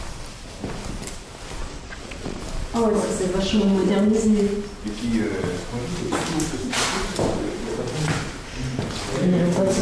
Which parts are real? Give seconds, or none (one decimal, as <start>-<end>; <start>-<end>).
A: 0.0-1.6; 2.4-9.8